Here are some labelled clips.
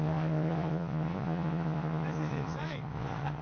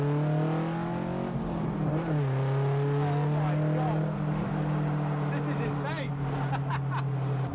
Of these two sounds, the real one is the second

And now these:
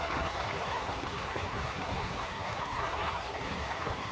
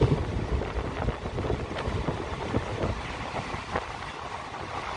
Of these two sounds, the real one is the second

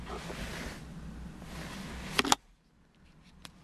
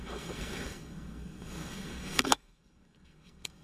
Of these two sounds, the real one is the first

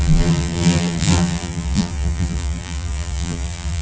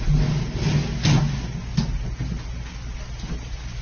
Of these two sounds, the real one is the second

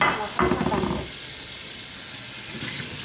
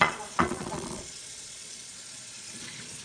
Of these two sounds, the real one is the first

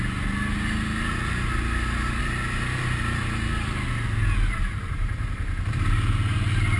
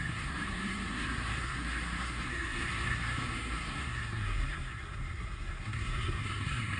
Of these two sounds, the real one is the first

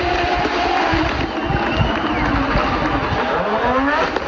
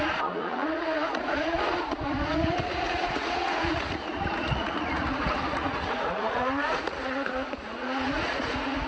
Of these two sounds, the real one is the first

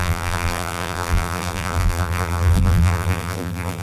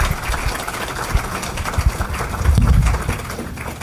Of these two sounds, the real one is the second